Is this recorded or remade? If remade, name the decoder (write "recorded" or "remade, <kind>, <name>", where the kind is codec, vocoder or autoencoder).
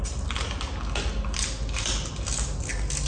recorded